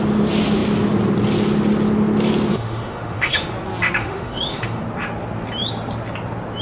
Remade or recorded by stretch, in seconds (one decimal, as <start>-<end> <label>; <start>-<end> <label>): 0.0-2.5 recorded; 2.5-3.5 remade; 3.5-4.0 recorded; 4.0-4.8 remade; 4.8-6.6 recorded